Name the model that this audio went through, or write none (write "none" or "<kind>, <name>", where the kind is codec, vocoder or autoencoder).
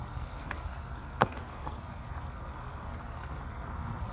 codec, SNAC